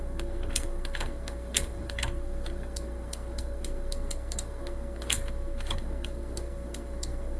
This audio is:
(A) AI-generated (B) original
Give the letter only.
A